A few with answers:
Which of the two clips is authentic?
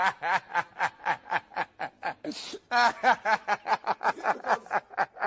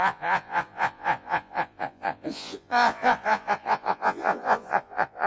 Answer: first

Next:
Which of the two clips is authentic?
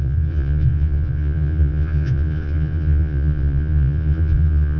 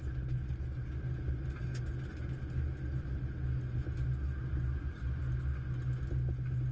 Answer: second